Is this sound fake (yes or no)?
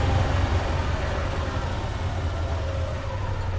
no